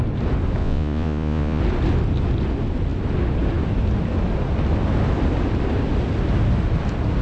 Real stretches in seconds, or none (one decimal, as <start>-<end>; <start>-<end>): 0.0-0.6; 1.6-7.2